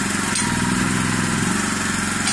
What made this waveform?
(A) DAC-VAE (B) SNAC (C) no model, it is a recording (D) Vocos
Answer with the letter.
C